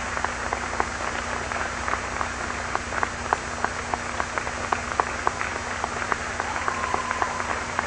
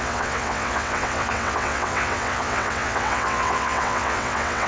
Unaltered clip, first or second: first